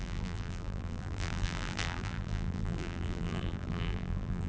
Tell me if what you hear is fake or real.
fake